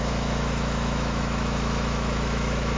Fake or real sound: fake